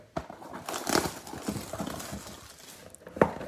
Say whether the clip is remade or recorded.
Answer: recorded